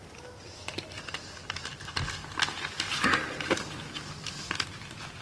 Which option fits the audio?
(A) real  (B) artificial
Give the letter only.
B